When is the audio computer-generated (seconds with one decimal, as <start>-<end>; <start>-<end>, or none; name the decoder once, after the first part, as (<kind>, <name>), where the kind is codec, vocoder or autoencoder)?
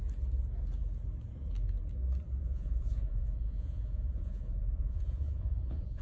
2.4-6.0 (vocoder, Vocos)